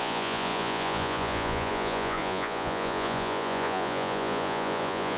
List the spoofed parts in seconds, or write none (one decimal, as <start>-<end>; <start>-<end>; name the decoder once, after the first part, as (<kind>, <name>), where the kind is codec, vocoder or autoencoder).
0.0-5.2 (vocoder, Vocos)